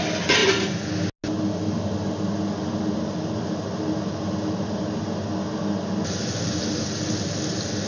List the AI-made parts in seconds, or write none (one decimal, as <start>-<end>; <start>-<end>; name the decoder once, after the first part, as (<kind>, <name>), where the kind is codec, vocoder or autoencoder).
none